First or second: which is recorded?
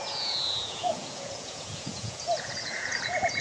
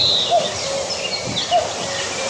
second